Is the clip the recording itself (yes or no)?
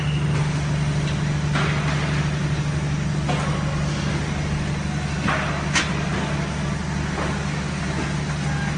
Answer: yes